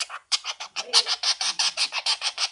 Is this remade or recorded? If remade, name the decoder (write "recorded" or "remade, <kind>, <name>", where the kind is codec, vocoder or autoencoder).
remade, vocoder, Vocos